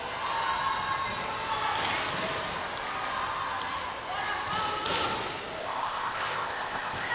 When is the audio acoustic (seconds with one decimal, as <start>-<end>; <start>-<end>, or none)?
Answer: 0.0-5.6